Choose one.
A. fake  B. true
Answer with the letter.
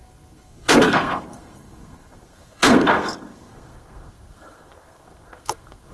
A